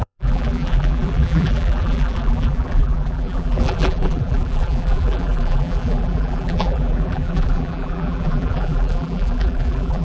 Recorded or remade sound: remade